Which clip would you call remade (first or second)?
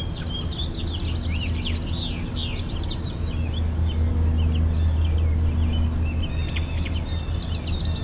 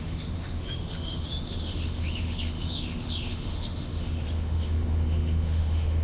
second